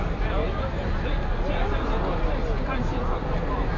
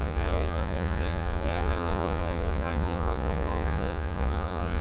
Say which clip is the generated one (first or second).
second